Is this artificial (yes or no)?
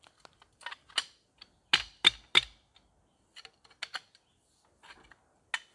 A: no